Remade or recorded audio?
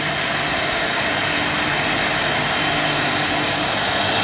recorded